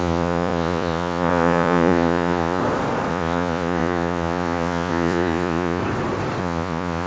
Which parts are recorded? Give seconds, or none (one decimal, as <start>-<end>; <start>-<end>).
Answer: 2.6-3.1; 5.8-6.4